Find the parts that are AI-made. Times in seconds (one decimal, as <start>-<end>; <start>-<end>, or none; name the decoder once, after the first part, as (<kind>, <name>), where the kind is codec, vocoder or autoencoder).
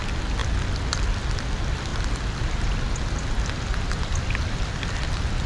none